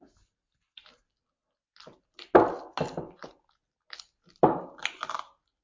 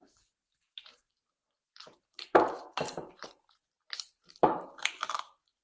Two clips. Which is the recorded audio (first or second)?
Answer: first